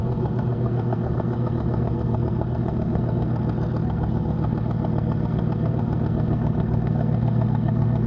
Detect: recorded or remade remade